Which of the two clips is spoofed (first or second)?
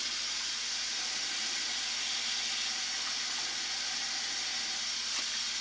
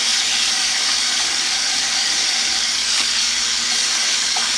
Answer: second